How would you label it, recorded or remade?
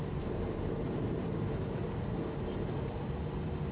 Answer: recorded